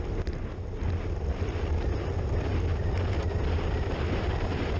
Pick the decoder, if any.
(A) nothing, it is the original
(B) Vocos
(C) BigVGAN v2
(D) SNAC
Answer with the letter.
A